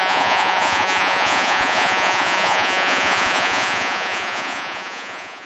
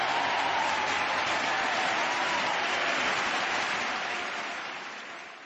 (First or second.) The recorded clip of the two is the second